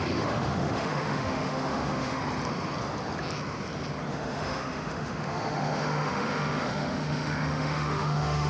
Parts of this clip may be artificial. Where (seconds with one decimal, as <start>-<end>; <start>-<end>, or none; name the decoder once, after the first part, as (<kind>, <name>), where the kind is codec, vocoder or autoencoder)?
0.0-2.2 (autoencoder, DAC-VAE); 4.1-8.5

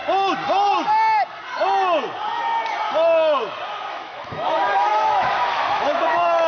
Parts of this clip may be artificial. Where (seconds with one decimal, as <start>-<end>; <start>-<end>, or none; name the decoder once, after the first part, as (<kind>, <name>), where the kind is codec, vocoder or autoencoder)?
3.9-6.5 (autoencoder, DAC-VAE)

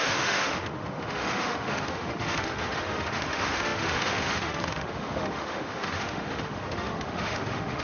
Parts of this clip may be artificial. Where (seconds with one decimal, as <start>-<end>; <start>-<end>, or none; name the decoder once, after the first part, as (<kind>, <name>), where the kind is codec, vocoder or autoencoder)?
0.0-7.8 (autoencoder, DAC-VAE)

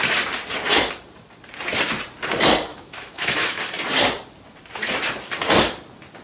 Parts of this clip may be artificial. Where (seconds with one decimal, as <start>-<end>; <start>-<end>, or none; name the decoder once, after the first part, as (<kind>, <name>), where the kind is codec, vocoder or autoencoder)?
2.7-3.6 (autoencoder, DAC-VAE)